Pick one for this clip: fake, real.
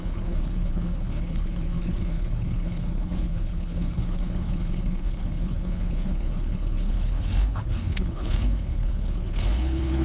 fake